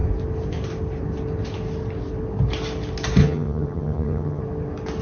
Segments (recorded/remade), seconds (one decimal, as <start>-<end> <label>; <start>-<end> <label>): 0.0-3.2 recorded; 3.2-4.4 remade; 4.4-5.0 recorded